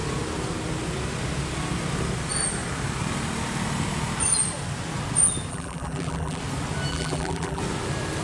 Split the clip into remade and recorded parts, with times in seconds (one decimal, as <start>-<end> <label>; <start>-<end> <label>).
0.0-5.5 recorded; 5.5-6.4 remade; 6.4-6.9 recorded; 6.9-7.6 remade; 7.6-8.2 recorded